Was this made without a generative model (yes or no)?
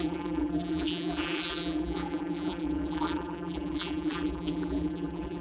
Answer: no